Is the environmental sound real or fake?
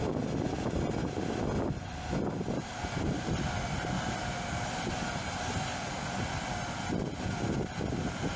real